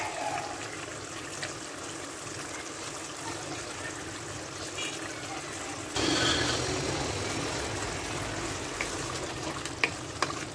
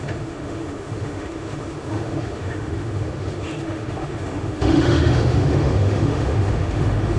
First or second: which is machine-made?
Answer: second